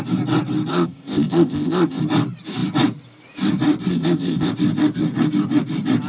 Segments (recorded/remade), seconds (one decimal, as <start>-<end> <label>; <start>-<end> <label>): 0.0-0.7 recorded; 0.7-2.0 remade; 2.0-3.9 recorded; 3.9-4.5 remade; 4.5-6.1 recorded